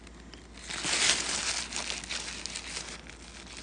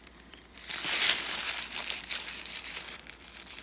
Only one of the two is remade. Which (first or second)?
second